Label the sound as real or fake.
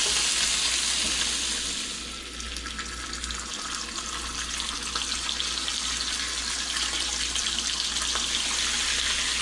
real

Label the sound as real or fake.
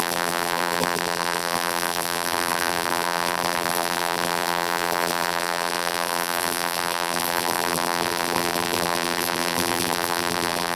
fake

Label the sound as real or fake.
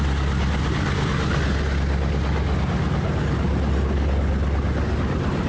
real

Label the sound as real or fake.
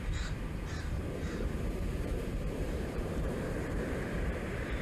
fake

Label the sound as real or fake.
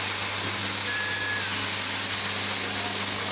real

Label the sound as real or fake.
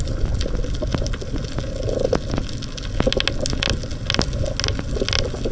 real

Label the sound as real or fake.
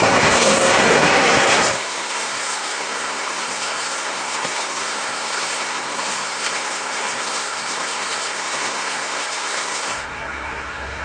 fake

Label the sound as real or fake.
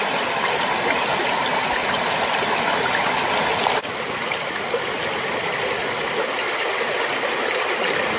real